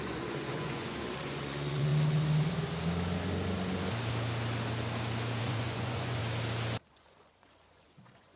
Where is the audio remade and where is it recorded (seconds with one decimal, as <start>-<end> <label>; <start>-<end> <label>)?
0.0-1.9 remade; 1.9-5.4 recorded; 5.4-6.2 remade; 6.2-6.9 recorded; 6.9-8.4 remade